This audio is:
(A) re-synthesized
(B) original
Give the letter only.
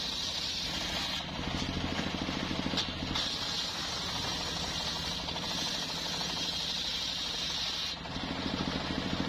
B